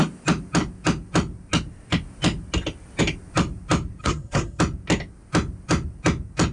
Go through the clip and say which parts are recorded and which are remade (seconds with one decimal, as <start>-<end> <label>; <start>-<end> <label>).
0.0-4.0 recorded; 4.0-4.6 remade; 4.6-6.5 recorded